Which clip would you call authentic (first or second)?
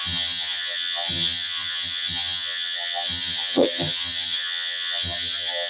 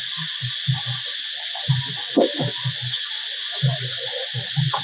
second